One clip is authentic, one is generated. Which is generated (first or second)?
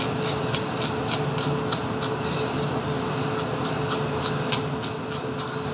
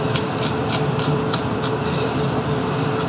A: second